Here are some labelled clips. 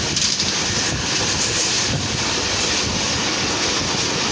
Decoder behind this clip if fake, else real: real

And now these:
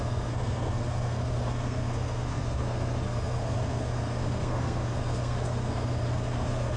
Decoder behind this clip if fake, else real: fake, codec, SNAC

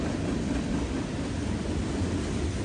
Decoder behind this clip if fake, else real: real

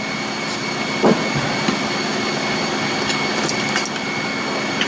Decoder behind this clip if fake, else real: real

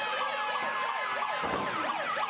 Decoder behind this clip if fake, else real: real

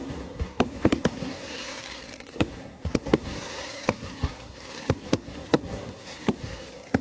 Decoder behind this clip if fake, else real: fake, codec, SNAC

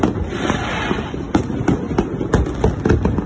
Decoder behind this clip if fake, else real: real